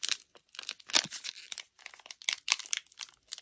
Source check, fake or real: real